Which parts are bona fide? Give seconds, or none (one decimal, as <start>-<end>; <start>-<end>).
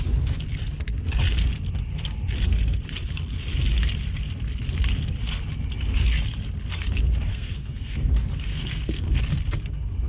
0.0-7.3; 8.1-8.5; 9.2-10.1